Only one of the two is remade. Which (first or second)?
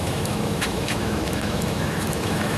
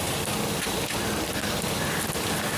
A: first